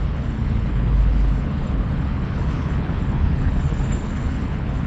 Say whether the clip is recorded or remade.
remade